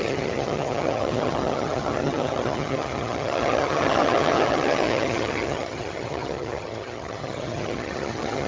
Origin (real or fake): fake